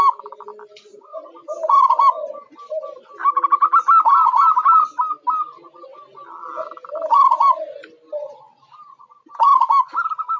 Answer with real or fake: real